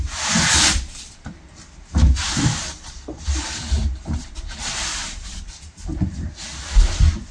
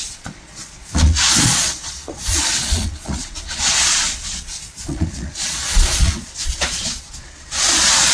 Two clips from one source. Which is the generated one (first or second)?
second